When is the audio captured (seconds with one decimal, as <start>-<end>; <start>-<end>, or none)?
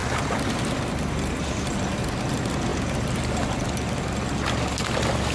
0.0-5.3